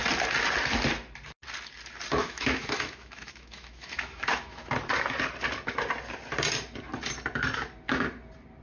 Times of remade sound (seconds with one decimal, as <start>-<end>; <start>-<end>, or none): 2.2-4.7